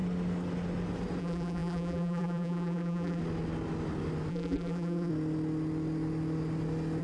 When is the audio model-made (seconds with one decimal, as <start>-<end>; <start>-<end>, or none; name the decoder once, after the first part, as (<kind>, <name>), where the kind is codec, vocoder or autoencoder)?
1.2-3.2 (vocoder, BigVGAN v2); 4.3-5.1